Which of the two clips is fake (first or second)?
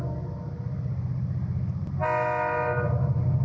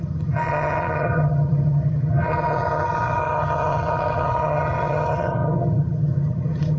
second